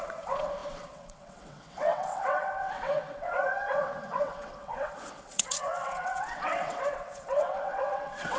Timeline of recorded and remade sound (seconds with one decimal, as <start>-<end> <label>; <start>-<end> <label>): 0.0-8.4 remade